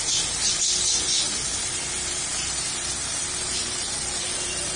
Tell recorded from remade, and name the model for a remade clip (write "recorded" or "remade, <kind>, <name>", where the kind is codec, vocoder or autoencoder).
remade, vocoder, BigVGAN v2